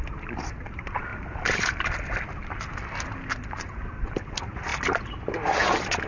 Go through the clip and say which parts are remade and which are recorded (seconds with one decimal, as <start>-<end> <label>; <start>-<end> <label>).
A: 0.0-1.1 recorded; 1.1-1.8 remade; 1.8-6.1 recorded